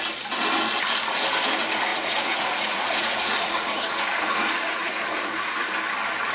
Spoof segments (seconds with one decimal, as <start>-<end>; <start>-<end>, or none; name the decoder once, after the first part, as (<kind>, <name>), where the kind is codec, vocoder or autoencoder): 1.9-5.7 (vocoder, Vocos)